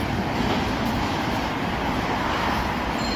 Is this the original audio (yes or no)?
yes